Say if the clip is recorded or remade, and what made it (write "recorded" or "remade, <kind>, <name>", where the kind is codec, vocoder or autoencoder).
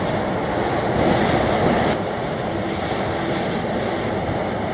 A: recorded